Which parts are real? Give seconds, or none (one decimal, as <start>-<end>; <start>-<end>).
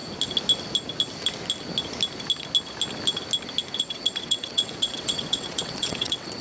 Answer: 0.0-3.8